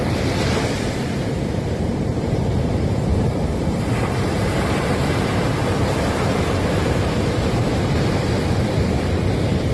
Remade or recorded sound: remade